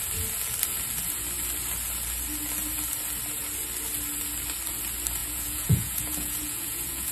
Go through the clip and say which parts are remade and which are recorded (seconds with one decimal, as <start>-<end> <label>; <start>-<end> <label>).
0.0-5.2 recorded; 5.2-7.1 remade